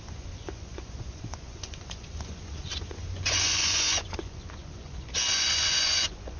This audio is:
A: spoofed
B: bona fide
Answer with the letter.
A